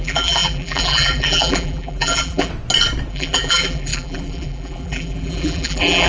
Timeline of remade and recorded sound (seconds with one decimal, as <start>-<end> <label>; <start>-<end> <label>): 0.0-2.5 remade; 2.5-3.1 recorded; 3.1-6.1 remade